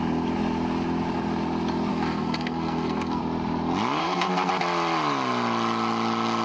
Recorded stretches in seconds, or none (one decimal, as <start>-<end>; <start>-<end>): 0.0-1.9; 3.2-4.0; 4.5-6.4